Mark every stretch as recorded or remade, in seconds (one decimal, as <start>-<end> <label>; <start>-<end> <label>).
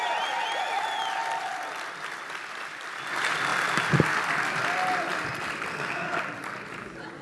0.0-5.7 recorded; 5.7-6.2 remade; 6.2-7.2 recorded